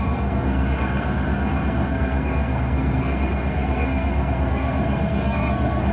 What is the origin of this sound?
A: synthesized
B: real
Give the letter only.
A